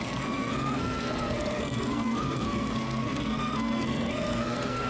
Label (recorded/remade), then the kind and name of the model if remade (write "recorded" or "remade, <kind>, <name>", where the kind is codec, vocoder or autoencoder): remade, codec, SNAC